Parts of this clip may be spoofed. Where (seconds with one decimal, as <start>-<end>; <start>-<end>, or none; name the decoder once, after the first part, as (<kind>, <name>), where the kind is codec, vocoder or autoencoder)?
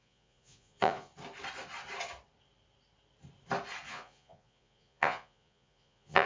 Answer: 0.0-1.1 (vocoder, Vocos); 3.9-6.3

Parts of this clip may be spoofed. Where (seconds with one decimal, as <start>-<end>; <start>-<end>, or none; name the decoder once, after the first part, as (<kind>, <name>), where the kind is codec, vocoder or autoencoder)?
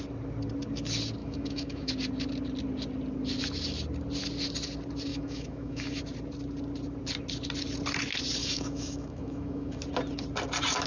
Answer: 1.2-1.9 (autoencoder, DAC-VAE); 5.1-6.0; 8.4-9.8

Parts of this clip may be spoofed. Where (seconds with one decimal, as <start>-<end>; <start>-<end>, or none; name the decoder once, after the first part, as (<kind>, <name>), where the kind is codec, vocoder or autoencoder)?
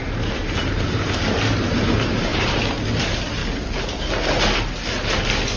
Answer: 0.0-3.4 (vocoder, BigVGAN v2)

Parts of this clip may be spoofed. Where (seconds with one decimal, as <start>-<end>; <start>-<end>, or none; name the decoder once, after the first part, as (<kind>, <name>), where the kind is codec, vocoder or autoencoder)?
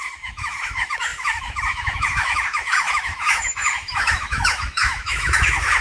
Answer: 0.0-5.8 (autoencoder, DAC-VAE)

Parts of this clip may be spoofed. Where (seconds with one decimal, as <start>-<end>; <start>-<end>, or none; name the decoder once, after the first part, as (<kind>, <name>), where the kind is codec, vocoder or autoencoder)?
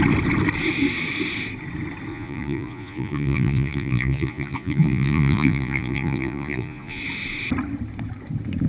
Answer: 2.1-7.0 (vocoder, Vocos)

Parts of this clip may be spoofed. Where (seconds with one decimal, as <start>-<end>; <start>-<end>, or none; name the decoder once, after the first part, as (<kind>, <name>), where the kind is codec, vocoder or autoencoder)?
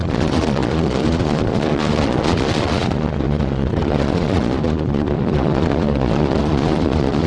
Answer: 0.0-7.3 (vocoder, Vocos)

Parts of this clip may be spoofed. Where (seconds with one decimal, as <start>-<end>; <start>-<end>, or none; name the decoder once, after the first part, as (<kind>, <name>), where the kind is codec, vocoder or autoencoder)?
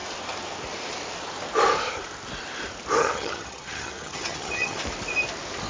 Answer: 3.0-4.8 (vocoder, HiFi-GAN)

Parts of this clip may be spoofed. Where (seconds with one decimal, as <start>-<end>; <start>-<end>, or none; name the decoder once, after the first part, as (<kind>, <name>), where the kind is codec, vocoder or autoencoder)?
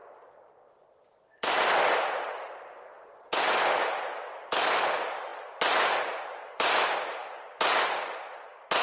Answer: none